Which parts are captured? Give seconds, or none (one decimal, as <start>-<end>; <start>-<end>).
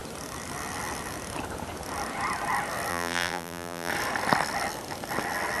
0.0-2.9; 3.9-5.6